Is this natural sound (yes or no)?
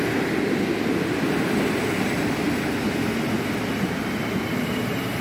yes